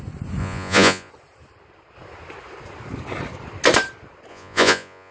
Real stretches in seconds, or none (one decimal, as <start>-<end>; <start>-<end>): 0.0-0.4; 1.1-4.3